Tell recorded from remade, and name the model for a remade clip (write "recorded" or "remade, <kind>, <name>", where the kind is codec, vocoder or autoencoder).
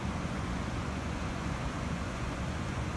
remade, vocoder, Vocos